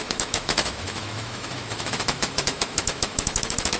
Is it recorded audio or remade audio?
remade